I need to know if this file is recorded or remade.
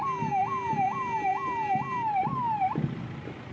recorded